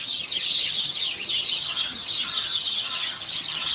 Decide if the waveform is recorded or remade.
remade